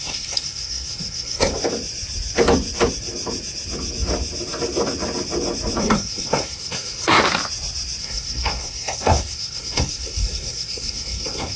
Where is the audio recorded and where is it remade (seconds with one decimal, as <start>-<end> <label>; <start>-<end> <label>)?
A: 0.0-1.5 remade; 1.5-5.8 recorded; 5.8-7.2 remade; 7.2-8.0 recorded; 8.0-11.6 remade

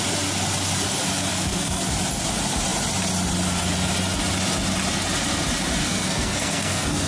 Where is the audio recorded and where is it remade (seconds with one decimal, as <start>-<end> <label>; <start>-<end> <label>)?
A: 0.0-1.3 recorded; 1.3-1.8 remade; 1.8-5.8 recorded; 5.8-7.1 remade

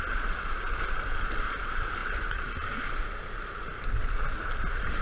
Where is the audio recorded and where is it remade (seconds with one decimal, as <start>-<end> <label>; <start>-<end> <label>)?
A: 0.0-5.0 recorded